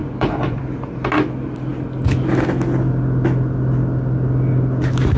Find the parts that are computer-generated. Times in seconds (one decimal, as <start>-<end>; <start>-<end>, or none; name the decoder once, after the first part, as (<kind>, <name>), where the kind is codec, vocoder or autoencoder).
0.0-0.6 (vocoder, Vocos)

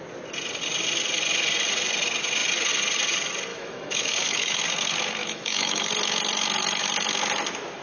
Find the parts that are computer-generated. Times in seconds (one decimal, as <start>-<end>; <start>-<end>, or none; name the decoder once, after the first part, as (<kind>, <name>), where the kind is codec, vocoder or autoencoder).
3.5-4.6 (autoencoder, DAC-VAE); 5.2-5.9

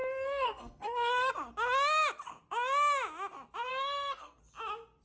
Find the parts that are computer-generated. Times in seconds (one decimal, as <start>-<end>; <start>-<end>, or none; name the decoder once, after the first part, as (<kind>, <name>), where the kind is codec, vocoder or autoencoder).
0.0-1.3 (codec, SNAC); 3.7-4.4

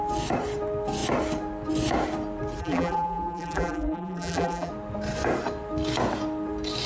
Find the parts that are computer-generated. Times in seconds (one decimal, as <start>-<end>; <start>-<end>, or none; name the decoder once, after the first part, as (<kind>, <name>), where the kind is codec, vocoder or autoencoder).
2.6-4.7 (vocoder, BigVGAN v2)

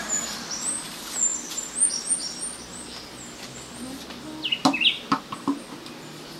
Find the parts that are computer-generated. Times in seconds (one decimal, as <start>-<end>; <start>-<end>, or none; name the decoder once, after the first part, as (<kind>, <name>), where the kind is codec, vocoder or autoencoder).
none

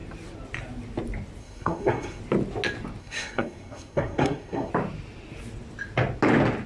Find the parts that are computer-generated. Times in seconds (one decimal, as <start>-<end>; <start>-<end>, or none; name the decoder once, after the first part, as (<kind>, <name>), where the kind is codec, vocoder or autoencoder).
1.4-2.2 (codec, SNAC); 3.0-4.7

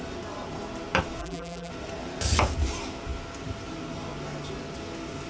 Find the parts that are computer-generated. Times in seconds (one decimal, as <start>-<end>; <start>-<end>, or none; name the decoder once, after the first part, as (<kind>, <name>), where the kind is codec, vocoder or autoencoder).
1.2-1.7 (vocoder, BigVGAN v2)

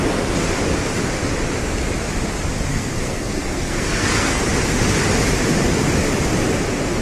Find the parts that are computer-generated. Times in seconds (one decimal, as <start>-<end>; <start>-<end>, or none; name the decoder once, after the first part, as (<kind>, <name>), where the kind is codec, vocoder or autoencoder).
2.7-4.4 (codec, SNAC)